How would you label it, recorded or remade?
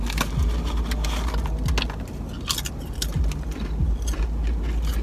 recorded